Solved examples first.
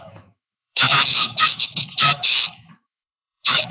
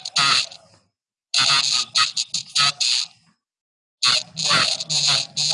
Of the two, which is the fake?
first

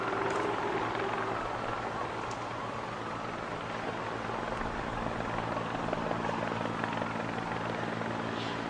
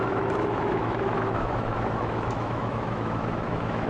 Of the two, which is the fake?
second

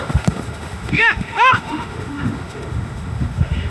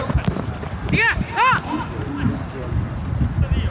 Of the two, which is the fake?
first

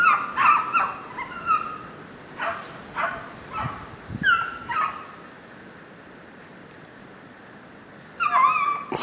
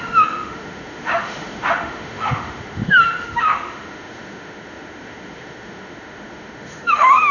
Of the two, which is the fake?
second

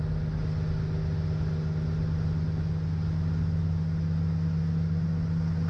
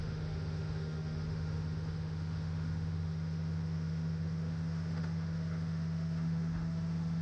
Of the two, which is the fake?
second